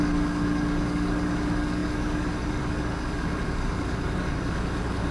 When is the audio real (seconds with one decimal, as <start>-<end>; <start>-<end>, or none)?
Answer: none